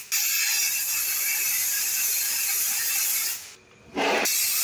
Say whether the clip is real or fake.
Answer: real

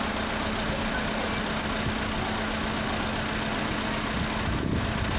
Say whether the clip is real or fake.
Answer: real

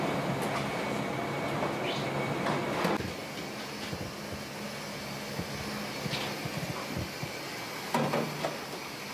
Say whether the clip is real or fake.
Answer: real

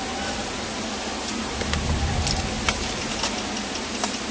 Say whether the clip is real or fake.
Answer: real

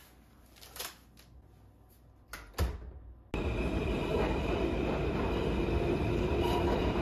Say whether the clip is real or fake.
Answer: real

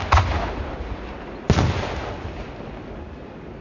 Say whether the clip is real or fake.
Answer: real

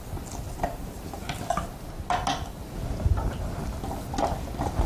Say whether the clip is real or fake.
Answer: real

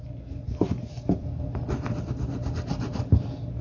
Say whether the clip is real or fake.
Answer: real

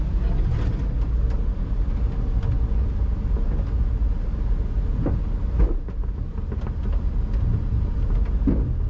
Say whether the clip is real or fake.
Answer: real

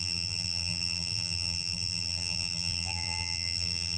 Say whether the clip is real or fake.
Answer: fake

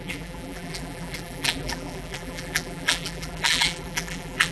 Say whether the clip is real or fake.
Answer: fake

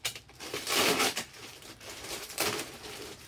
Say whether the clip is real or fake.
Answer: fake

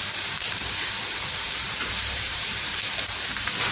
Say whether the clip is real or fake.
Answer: fake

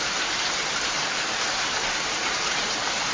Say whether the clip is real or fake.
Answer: fake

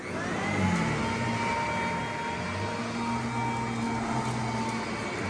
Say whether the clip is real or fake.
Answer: real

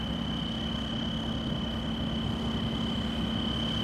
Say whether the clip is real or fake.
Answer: real